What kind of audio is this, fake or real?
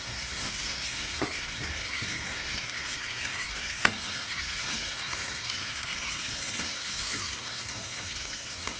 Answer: fake